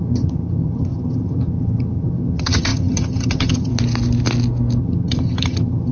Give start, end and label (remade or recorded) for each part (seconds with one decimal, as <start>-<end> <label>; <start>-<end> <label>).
0.0-3.7 remade; 3.7-4.8 recorded; 4.8-5.9 remade